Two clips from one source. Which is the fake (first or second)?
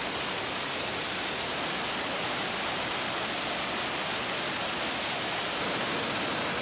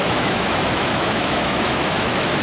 second